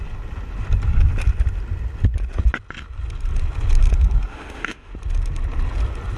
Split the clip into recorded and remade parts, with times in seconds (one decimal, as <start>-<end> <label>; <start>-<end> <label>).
0.0-4.3 recorded; 4.3-4.9 remade; 4.9-6.2 recorded